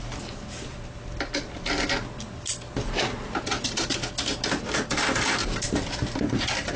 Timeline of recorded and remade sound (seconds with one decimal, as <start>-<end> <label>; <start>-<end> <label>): 0.0-6.8 recorded